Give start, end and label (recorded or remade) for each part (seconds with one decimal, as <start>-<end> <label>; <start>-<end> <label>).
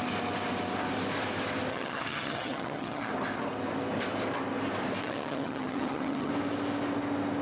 0.0-1.7 recorded; 1.7-3.1 remade; 3.1-5.0 recorded; 5.0-6.3 remade; 6.3-7.4 recorded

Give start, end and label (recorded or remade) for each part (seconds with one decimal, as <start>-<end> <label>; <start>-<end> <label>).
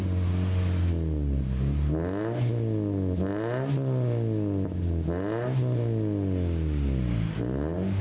0.0-8.0 recorded